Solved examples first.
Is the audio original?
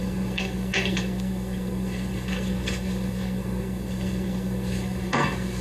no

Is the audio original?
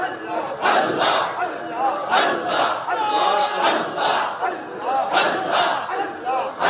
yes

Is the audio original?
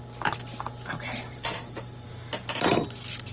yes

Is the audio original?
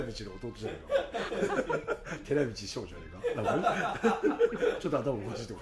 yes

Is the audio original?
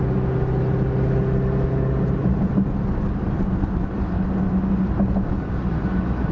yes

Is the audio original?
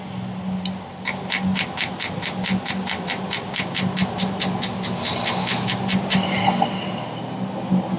yes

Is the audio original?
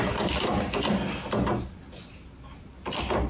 yes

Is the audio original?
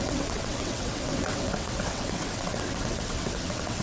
no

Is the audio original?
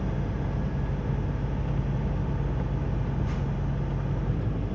yes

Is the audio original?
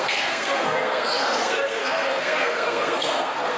no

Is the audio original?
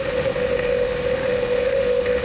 no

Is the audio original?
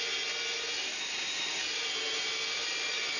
yes